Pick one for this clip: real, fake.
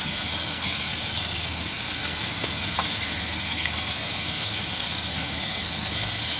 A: fake